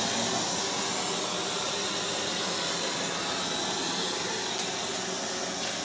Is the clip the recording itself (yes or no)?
yes